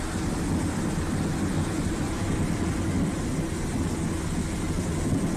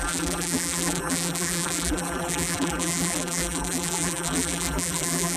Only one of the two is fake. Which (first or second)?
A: second